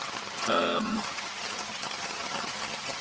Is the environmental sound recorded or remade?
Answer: remade